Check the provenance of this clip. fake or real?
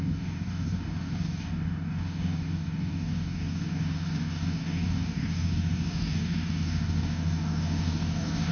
fake